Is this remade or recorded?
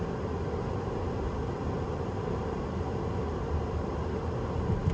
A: recorded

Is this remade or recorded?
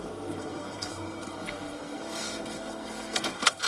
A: remade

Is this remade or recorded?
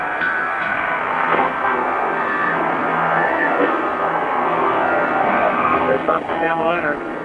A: remade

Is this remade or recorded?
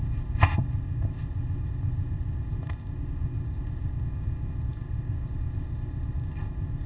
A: remade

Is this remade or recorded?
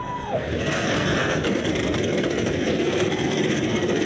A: remade